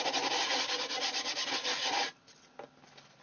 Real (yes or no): yes